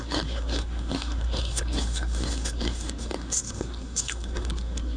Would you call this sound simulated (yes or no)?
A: yes